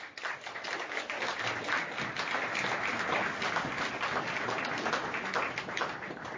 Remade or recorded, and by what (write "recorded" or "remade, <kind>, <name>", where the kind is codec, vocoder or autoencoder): recorded